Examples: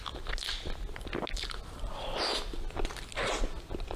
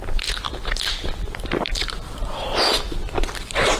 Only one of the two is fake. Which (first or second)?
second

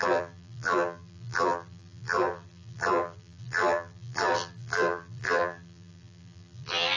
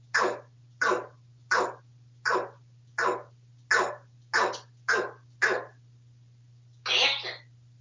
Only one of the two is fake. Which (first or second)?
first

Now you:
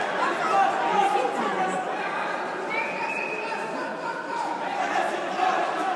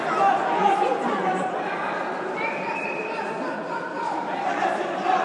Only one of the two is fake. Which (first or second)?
second